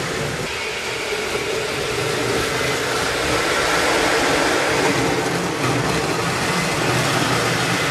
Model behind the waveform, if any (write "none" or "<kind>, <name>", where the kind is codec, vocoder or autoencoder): none